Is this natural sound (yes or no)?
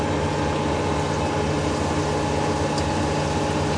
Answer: yes